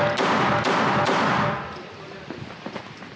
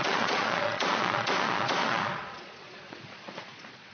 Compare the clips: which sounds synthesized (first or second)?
second